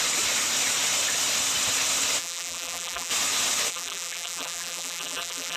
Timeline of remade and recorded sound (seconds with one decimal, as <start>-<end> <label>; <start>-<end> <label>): 0.0-2.2 recorded; 2.2-3.1 remade; 3.1-3.7 recorded; 3.7-5.6 remade